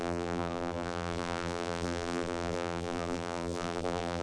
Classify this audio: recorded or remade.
remade